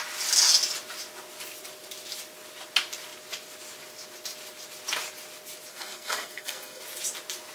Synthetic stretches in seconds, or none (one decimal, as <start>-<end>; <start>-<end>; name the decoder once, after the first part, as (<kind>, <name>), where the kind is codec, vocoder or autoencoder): 5.7-6.8 (codec, SNAC)